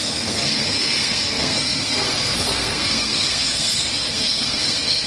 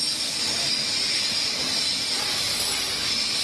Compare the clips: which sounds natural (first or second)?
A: second